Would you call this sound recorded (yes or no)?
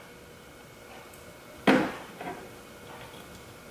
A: yes